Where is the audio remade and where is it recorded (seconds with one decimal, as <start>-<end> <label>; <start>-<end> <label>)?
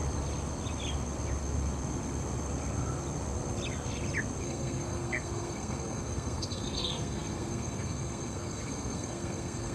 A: 0.0-4.4 recorded; 4.4-9.7 remade